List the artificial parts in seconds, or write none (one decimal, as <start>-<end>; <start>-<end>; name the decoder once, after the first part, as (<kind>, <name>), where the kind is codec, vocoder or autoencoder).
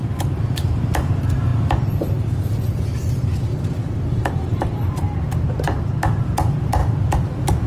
0.0-3.5 (vocoder, BigVGAN v2); 4.1-6.8